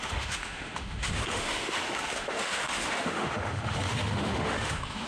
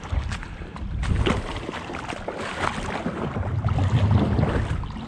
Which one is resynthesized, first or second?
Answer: first